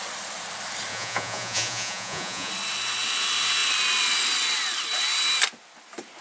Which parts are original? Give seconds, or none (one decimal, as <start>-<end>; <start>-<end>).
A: 0.0-0.9; 2.5-6.2